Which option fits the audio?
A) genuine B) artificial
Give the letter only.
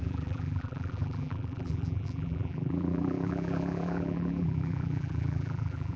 B